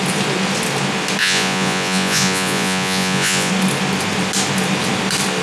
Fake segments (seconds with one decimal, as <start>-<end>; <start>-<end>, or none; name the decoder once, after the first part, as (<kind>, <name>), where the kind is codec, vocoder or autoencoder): 1.2-3.5 (vocoder, Vocos)